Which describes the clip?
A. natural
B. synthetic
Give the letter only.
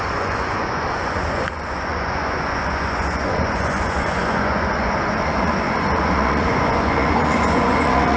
B